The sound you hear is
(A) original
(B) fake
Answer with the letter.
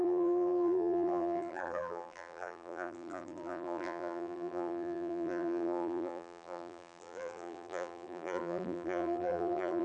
B